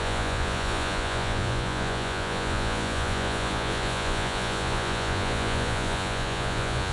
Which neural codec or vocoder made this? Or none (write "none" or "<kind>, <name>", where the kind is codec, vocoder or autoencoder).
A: vocoder, Vocos